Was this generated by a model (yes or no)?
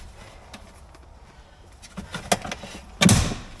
no